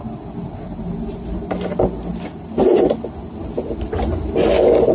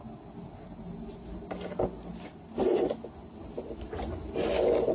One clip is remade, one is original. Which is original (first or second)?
second